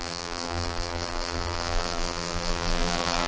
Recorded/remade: remade